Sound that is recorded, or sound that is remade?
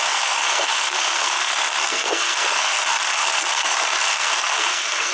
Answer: remade